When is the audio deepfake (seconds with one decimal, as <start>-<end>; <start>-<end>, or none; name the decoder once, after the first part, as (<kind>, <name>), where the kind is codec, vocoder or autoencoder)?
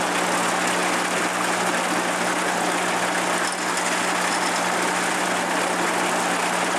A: none